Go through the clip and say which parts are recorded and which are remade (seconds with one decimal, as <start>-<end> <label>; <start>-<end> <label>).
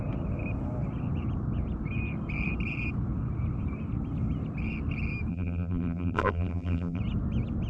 0.0-5.3 recorded; 5.3-7.0 remade; 7.0-7.7 recorded